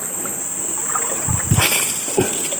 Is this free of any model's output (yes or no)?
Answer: yes